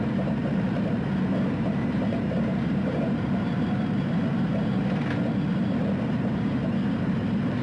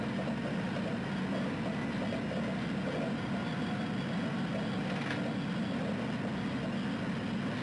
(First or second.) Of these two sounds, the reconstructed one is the first